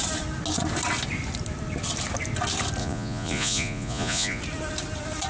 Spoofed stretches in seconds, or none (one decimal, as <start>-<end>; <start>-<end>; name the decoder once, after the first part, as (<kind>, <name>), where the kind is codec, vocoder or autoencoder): 2.8-4.4 (vocoder, Vocos)